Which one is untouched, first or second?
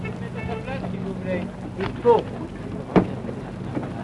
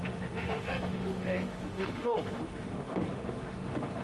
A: first